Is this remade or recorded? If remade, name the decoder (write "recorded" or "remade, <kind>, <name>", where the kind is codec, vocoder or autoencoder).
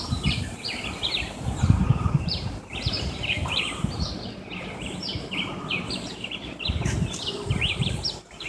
remade, vocoder, BigVGAN v2